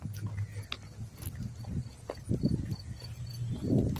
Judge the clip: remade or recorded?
recorded